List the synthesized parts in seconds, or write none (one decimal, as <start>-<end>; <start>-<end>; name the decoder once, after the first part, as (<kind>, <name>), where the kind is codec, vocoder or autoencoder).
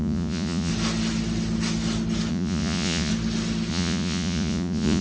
0.0-0.7 (vocoder, Vocos); 2.3-3.1; 3.7-5.0